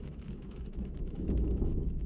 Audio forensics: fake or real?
fake